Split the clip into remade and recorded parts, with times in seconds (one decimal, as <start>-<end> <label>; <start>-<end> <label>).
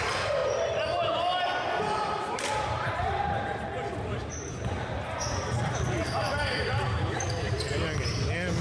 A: 0.0-0.4 remade; 0.4-1.8 recorded; 1.8-8.6 remade